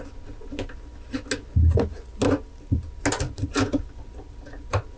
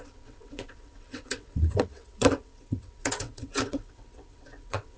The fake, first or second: second